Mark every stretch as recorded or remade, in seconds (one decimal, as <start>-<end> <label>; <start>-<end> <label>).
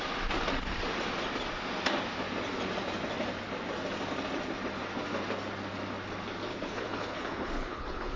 0.0-6.5 recorded; 6.5-8.2 remade